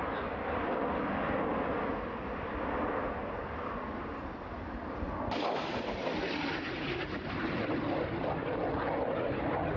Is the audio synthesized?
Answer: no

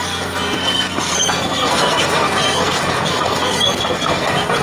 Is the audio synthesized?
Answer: yes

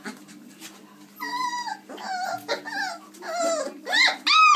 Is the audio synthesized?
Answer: no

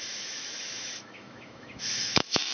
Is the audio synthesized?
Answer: yes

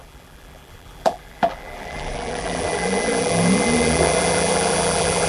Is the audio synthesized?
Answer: yes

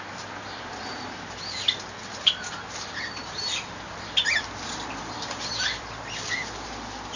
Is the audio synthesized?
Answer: yes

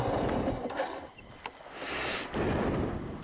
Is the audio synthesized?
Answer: no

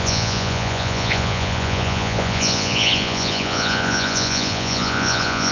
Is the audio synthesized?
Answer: yes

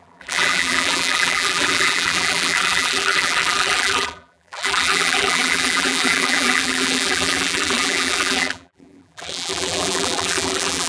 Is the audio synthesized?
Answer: yes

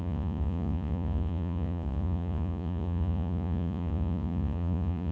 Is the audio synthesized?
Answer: yes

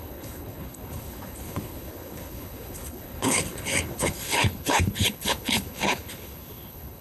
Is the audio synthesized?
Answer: yes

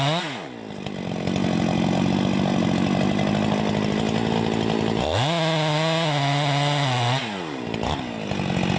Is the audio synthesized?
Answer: no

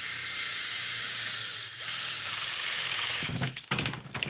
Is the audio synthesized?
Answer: yes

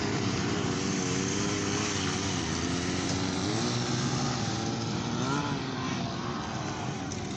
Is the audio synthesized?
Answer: no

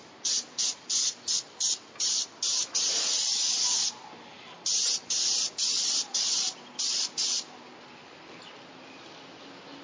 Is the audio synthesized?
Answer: no